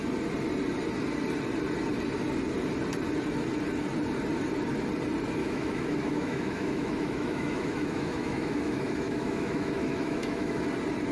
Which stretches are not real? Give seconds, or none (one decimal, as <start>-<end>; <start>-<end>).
5.4-10.6